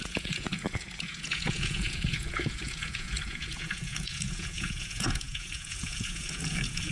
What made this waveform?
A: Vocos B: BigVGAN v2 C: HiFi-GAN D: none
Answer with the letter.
A